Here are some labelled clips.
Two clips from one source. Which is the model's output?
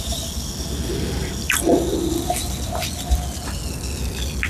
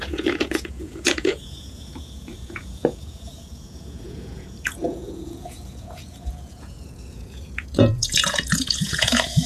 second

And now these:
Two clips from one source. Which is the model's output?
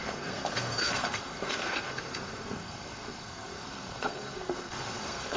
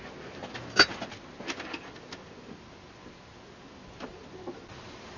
first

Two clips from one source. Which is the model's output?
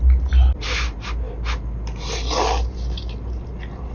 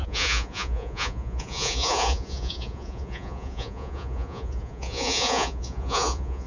second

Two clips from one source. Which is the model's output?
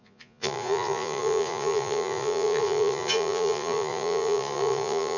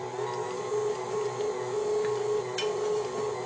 first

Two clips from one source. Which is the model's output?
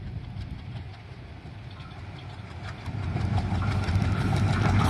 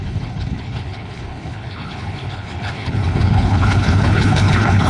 second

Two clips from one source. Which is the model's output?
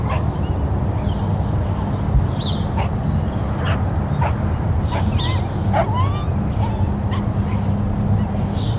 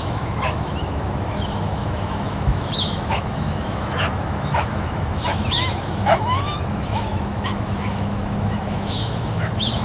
second